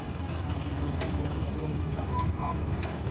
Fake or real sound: fake